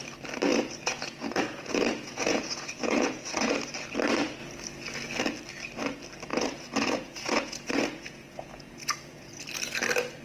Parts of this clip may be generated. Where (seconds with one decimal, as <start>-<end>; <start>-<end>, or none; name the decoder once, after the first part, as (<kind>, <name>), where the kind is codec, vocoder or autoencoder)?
0.5-3.5 (vocoder, Vocos); 6.3-9.4